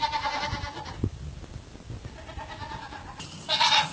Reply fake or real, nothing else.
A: real